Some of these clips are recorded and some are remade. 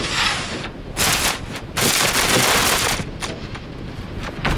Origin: recorded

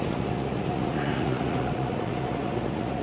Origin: remade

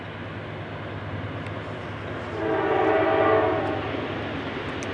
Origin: recorded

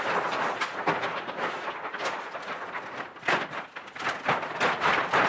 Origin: recorded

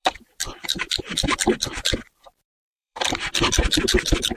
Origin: remade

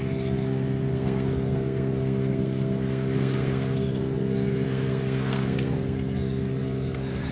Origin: remade